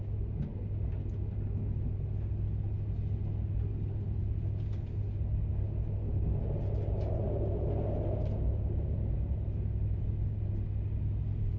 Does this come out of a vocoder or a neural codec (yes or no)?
no